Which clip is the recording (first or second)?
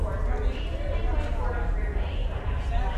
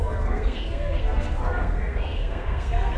first